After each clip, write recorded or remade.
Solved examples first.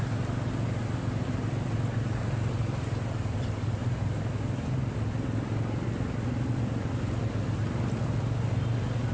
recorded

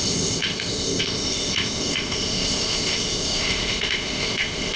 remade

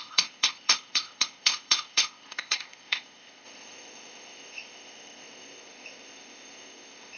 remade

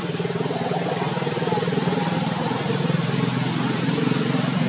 recorded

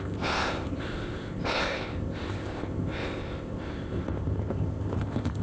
remade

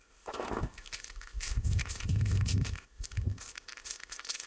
remade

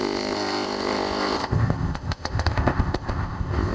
remade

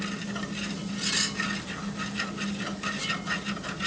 recorded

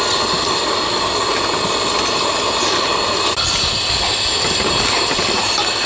recorded